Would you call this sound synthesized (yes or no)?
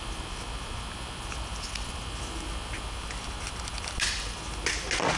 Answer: no